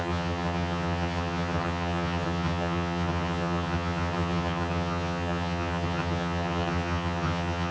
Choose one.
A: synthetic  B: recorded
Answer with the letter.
A